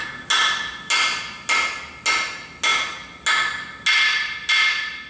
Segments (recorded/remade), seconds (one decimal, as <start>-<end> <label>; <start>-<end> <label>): 0.0-5.1 recorded